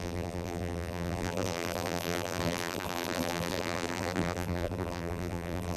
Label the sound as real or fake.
fake